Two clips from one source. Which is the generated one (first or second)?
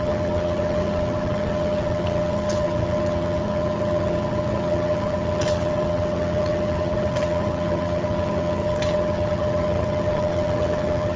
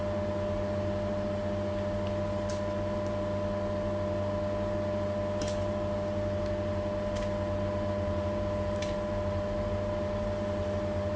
first